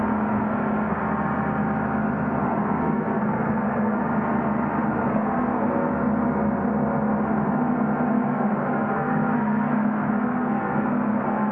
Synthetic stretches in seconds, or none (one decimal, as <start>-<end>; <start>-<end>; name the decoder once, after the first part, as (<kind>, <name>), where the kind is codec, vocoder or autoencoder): 0.0-1.0 (codec, SNAC); 2.4-4.0; 4.9-5.9; 8.1-11.5